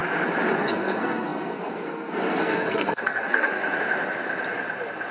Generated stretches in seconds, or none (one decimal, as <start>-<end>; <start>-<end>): 0.6-3.6